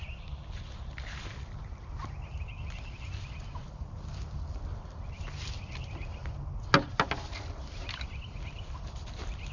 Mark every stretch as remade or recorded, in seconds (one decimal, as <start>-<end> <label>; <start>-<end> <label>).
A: 0.0-9.5 recorded